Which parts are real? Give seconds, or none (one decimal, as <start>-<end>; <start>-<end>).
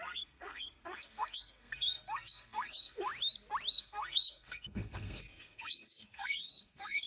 3.1-3.7